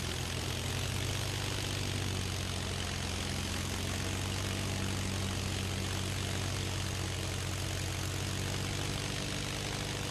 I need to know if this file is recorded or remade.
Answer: recorded